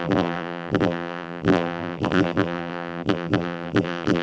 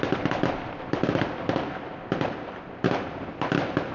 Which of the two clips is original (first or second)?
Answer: second